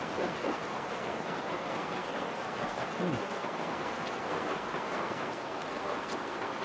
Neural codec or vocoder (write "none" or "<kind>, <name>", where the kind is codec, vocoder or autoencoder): codec, SNAC